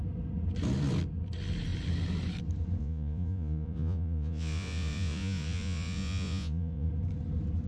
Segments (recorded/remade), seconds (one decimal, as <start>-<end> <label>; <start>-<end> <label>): 0.0-2.8 recorded; 2.8-6.9 remade; 6.9-7.7 recorded